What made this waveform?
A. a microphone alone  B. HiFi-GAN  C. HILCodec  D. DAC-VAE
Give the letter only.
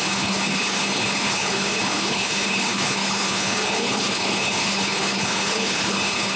C